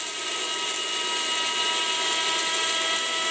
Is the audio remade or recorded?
recorded